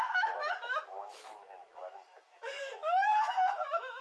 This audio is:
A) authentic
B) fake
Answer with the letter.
B